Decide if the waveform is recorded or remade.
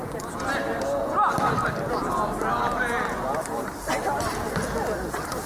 recorded